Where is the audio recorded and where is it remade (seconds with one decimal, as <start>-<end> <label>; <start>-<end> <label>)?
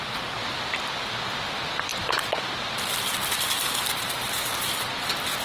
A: 0.0-0.4 recorded; 0.4-1.1 remade; 1.1-1.9 recorded; 1.9-2.4 remade; 2.4-4.0 recorded; 4.0-4.9 remade; 4.9-5.4 recorded